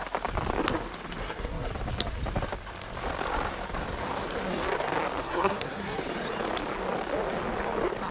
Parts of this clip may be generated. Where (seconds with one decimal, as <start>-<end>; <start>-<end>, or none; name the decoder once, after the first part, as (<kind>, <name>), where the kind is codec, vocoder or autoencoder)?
1.2-1.7 (codec, SNAC); 5.2-6.0